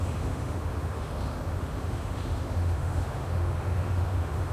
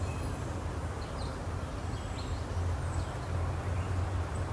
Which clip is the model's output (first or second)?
first